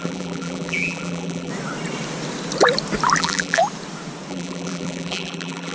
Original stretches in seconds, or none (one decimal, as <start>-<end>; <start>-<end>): 1.5-3.2; 3.6-4.3